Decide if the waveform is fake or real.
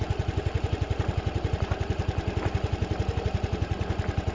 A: real